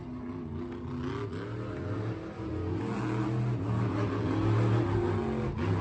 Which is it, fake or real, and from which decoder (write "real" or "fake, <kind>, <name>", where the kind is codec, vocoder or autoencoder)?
real